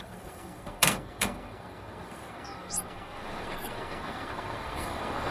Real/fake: fake